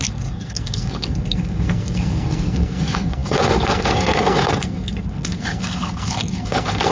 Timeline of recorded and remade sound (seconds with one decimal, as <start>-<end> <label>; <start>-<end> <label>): 0.0-6.9 remade